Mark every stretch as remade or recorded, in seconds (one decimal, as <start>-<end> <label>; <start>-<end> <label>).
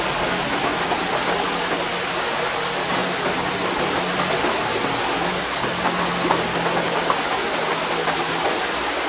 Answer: 0.0-9.1 recorded